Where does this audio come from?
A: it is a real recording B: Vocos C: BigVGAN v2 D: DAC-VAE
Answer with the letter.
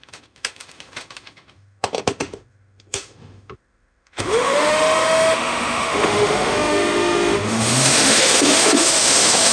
D